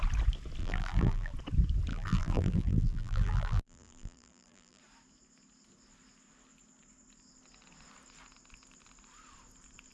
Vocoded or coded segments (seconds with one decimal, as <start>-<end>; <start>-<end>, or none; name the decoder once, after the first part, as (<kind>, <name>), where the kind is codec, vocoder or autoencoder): 0.6-1.3 (vocoder, BigVGAN v2); 1.9-4.8